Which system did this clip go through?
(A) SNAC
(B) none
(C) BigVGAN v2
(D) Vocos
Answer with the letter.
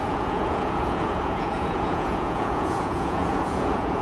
D